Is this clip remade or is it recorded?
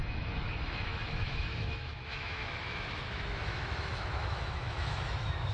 remade